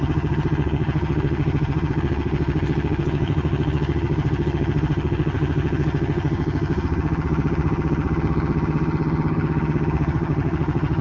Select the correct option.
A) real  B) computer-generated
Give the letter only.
B